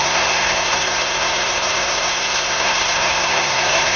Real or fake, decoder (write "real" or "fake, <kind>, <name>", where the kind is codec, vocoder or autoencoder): fake, codec, SNAC